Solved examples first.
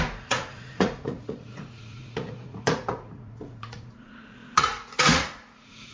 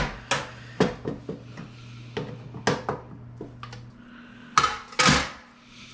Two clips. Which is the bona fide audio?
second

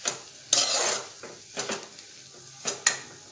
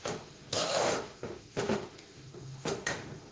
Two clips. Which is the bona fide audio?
first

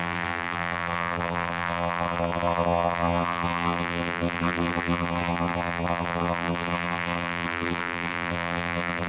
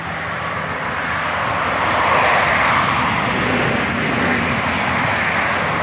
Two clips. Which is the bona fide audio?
second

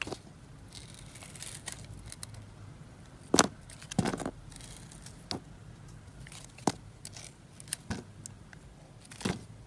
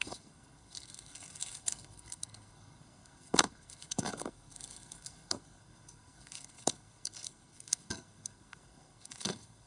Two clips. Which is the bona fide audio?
first